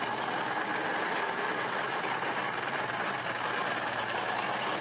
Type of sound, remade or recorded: recorded